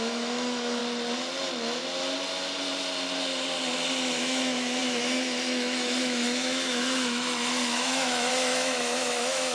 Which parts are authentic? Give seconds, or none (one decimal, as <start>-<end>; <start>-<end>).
0.8-4.2